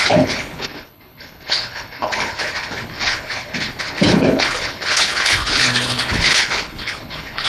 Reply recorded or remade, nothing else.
remade